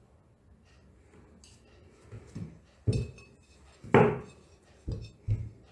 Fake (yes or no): no